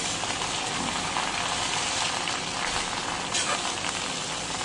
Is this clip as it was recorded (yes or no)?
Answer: yes